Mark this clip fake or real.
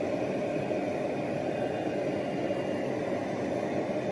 real